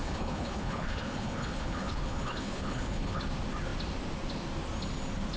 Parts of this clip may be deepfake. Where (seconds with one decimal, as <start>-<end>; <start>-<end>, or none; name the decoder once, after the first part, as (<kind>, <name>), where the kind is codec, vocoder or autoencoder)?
0.0-3.2 (codec, HILCodec)